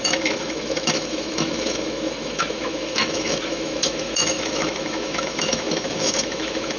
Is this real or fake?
fake